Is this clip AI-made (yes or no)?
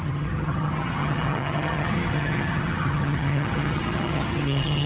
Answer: yes